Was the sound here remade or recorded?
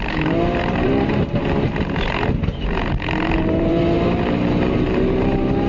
remade